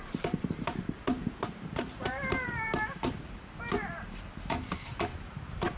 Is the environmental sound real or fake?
fake